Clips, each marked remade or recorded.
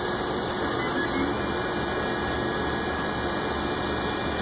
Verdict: recorded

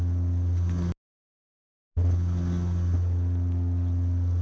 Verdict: recorded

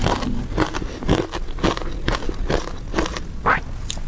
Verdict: recorded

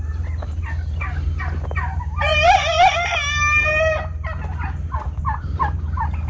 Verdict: recorded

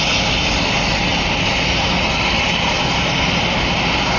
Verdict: recorded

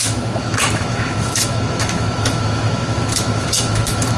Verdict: remade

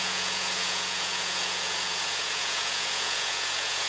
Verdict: remade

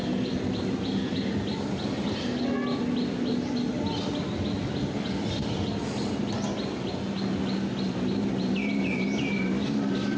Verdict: recorded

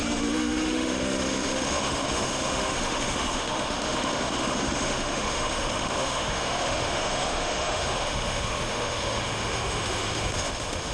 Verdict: remade